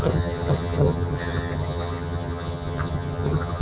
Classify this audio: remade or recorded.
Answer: remade